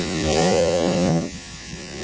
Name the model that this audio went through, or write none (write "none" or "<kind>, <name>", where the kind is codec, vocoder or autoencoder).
vocoder, Vocos